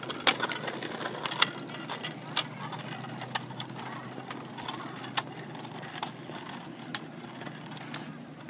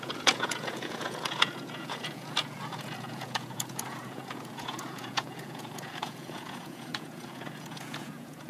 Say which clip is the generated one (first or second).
second